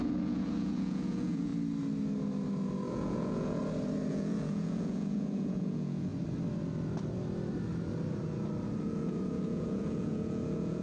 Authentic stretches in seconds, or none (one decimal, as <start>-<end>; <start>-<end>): 1.5-2.9; 3.6-4.1; 6.1-8.8